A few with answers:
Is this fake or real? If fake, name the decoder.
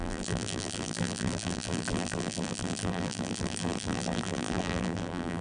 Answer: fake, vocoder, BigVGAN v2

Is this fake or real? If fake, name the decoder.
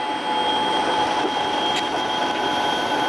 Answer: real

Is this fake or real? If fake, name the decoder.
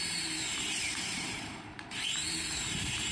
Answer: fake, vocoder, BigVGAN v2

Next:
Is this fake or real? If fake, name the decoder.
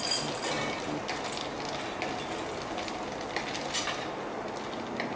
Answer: real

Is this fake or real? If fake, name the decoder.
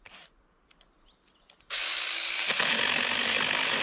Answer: real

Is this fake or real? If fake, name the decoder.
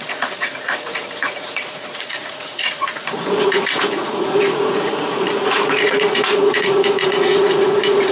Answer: fake, vocoder, Vocos